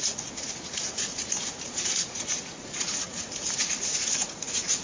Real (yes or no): no